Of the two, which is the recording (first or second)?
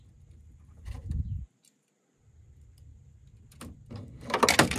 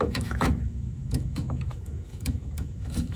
first